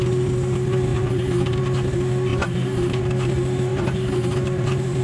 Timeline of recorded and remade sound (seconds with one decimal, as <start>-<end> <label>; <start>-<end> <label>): 0.0-0.9 recorded; 0.9-1.6 remade; 1.6-2.3 recorded; 2.3-3.0 remade; 3.0-3.7 recorded; 3.7-5.0 remade